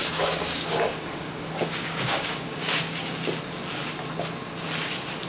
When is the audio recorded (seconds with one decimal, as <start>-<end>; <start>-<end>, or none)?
3.2-5.3